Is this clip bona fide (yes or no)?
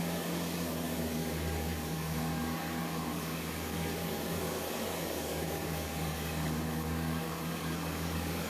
no